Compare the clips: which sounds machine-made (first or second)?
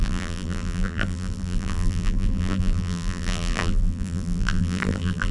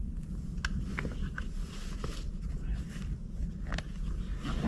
first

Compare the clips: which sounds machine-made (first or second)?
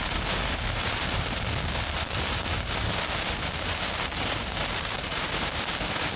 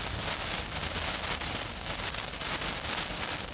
first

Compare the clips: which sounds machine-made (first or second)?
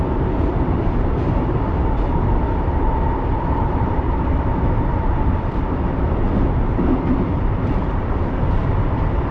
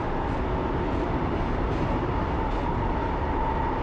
first